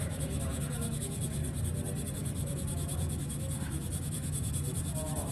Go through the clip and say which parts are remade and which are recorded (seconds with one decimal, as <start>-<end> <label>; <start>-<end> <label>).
0.0-1.4 remade; 1.4-2.1 recorded; 2.1-5.3 remade